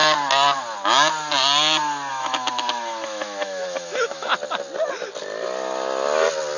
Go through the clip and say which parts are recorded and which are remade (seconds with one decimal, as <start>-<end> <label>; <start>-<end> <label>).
0.0-2.1 recorded; 2.1-4.3 remade; 4.3-6.6 recorded